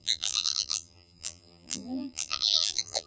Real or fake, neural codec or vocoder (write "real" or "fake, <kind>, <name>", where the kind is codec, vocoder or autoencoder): fake, vocoder, BigVGAN v2